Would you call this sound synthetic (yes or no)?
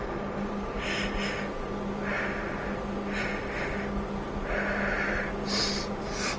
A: no